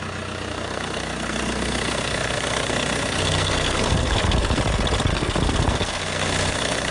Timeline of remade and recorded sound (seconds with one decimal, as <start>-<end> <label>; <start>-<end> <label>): 0.0-0.5 recorded; 0.5-4.6 remade; 4.6-5.1 recorded; 5.1-6.9 remade